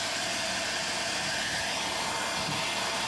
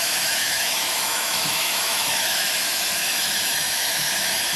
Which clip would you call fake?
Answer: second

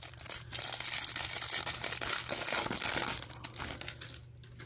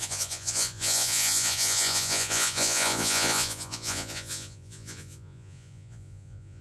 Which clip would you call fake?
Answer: second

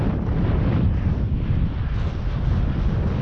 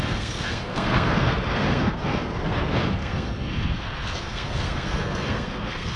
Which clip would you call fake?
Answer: second